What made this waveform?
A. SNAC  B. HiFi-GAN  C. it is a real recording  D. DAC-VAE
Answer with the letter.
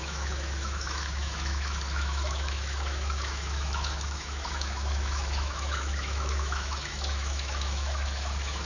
D